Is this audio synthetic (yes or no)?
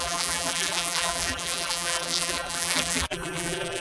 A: yes